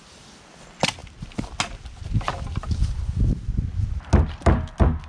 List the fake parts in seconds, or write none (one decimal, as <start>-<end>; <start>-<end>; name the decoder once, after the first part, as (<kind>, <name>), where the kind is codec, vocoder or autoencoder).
none